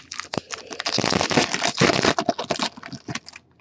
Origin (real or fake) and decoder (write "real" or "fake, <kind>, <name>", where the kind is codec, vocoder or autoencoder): real